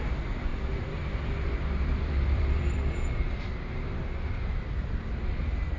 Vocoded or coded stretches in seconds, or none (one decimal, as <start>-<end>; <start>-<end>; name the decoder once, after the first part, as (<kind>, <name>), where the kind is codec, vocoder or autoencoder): 0.5-4.0 (vocoder, BigVGAN v2)